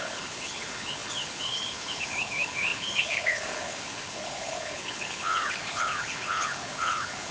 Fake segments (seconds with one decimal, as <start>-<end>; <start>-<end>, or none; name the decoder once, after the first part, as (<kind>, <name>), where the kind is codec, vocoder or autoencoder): 0.0-7.3 (codec, HILCodec)